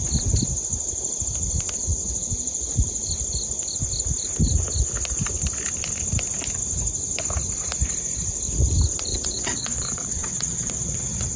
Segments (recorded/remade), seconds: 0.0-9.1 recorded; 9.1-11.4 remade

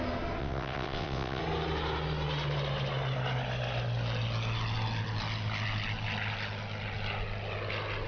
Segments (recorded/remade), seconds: 0.0-0.4 recorded; 0.4-1.4 remade; 1.4-8.1 recorded

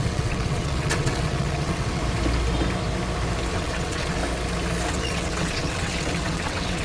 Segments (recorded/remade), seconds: 0.0-2.0 remade; 2.0-3.5 recorded; 3.5-4.2 remade; 4.2-4.9 recorded; 4.9-6.8 remade